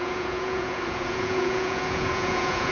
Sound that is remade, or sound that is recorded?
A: remade